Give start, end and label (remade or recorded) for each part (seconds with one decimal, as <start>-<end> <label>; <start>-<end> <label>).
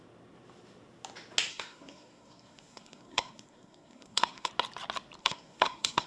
0.0-1.5 recorded; 1.5-4.5 remade; 4.5-5.2 recorded; 5.2-6.1 remade